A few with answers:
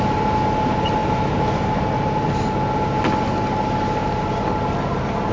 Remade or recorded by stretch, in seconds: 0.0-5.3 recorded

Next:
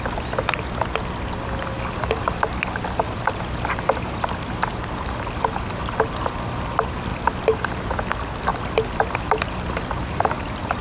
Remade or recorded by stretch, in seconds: 0.0-7.1 recorded; 7.1-7.7 remade; 7.7-8.5 recorded; 8.5-10.8 remade

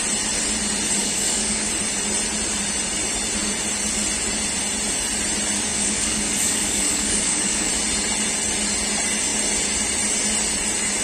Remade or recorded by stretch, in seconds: 0.0-1.0 recorded; 1.0-1.7 remade; 1.7-5.7 recorded; 5.7-7.7 remade; 7.7-11.0 recorded

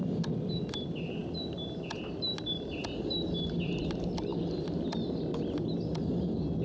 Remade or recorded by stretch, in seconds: 0.0-4.3 recorded; 4.3-4.9 remade; 4.9-6.6 recorded